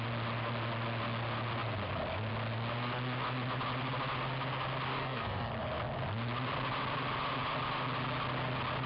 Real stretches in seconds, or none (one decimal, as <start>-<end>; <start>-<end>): 0.0-5.0; 5.5-8.9